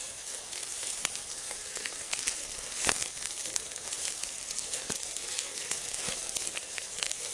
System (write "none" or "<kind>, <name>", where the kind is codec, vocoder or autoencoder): codec, SNAC